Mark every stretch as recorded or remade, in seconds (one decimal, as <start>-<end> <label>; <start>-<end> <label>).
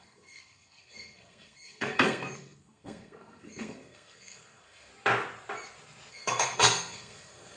0.0-4.9 remade; 4.9-6.1 recorded; 6.1-7.6 remade